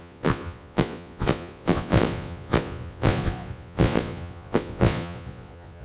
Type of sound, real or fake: fake